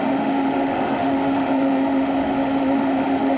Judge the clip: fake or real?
fake